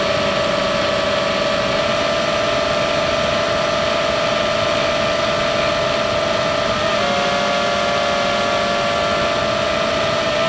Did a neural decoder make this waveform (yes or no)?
no